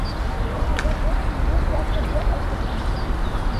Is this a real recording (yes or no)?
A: yes